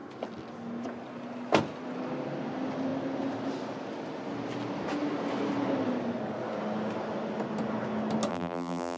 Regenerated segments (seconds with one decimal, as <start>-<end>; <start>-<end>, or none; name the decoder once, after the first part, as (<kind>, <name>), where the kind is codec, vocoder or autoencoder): 8.3-9.0 (vocoder, BigVGAN v2)